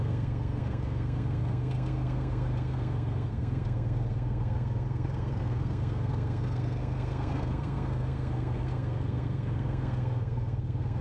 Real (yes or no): no